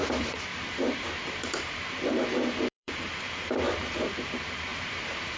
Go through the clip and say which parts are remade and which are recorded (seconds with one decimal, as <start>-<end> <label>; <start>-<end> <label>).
0.0-2.0 remade; 2.0-2.7 recorded; 2.7-5.4 remade